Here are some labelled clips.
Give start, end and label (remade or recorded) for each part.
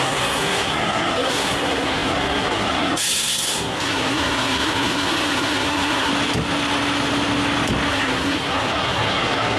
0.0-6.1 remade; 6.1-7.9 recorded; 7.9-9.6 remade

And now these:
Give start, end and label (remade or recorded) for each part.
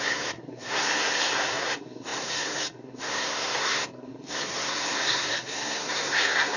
0.0-6.6 remade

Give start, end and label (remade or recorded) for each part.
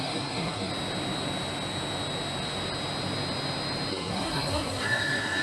0.0-0.7 remade; 0.7-3.9 recorded; 3.9-5.4 remade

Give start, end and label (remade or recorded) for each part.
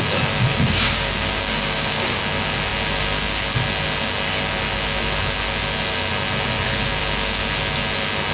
0.0-0.5 recorded; 0.5-2.2 remade; 2.2-8.3 recorded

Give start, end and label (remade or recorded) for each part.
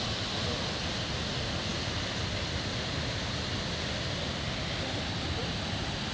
0.0-6.1 recorded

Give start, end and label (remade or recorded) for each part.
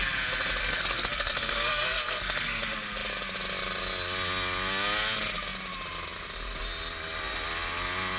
0.0-0.6 recorded; 0.6-2.6 remade; 2.6-8.2 recorded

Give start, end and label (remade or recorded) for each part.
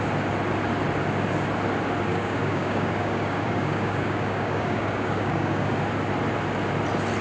0.0-2.1 recorded; 2.1-5.7 remade; 5.7-7.2 recorded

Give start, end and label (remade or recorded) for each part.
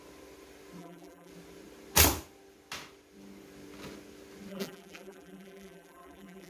0.0-0.8 recorded; 0.8-1.3 remade; 1.3-4.5 recorded; 4.5-6.5 remade